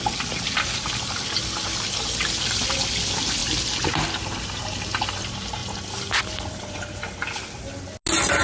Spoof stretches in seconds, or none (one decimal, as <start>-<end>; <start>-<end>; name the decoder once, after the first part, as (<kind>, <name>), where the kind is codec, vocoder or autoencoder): none